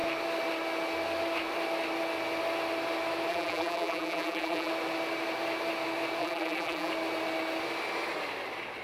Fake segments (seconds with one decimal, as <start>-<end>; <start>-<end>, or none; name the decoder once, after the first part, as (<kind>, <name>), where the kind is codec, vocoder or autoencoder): 3.3-4.7 (vocoder, BigVGAN v2); 6.2-6.9

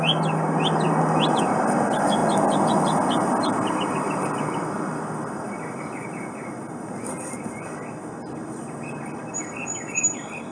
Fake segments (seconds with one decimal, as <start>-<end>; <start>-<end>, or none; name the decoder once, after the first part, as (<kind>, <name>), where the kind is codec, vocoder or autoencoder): none